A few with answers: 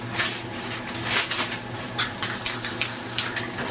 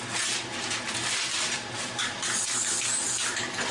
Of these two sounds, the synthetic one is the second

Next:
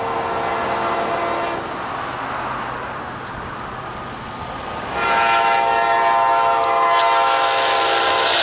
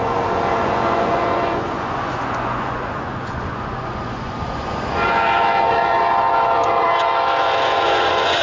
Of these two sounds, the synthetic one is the second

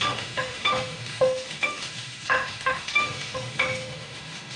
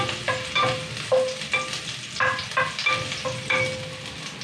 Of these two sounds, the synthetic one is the first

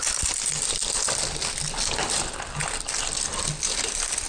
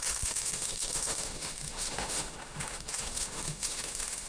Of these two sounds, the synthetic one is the second